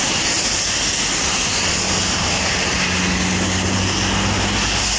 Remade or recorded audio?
recorded